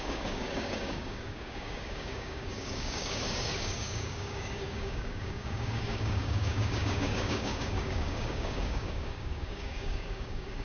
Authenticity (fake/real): fake